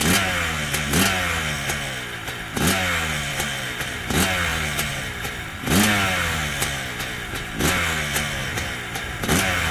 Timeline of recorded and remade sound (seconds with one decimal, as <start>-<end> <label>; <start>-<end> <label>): 0.0-3.3 recorded; 3.3-4.1 remade; 4.1-4.5 recorded; 4.5-5.0 remade; 5.0-8.4 recorded; 8.4-9.7 remade

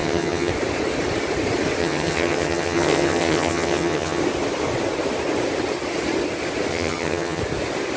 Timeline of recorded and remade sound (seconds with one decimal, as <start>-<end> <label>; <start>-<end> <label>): 0.0-0.5 remade; 0.5-1.8 recorded; 1.8-4.2 remade; 4.2-6.7 recorded; 6.7-7.4 remade; 7.4-8.0 recorded

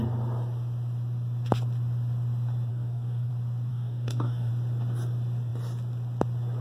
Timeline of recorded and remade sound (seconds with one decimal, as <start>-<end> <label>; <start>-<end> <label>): 0.0-2.7 recorded; 2.7-3.3 remade; 3.3-3.7 recorded; 3.7-4.5 remade; 4.5-6.6 recorded

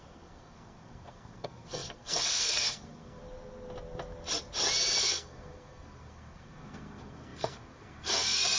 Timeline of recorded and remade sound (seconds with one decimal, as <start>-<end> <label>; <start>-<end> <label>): 0.0-3.2 remade; 3.2-5.0 recorded; 5.0-8.6 remade

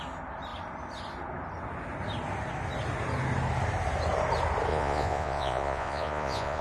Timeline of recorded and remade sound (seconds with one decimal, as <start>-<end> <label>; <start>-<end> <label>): 0.0-4.7 recorded; 4.7-6.6 remade